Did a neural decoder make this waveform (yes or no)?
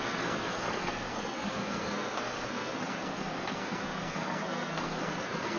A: yes